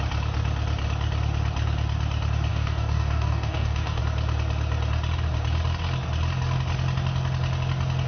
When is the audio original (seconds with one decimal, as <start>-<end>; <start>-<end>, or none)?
0.0-2.5; 4.0-8.1